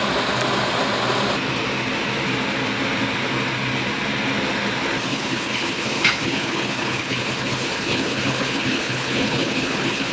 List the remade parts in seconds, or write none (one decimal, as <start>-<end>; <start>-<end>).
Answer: 5.1-10.1